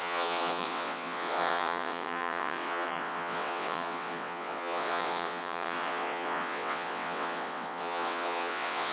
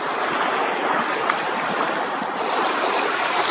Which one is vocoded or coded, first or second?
first